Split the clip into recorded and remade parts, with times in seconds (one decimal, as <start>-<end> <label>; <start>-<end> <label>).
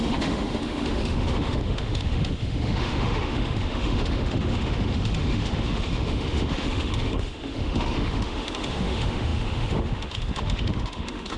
0.0-11.4 remade